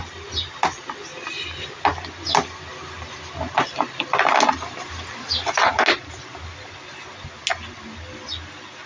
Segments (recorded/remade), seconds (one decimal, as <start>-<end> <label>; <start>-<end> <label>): 0.0-8.9 recorded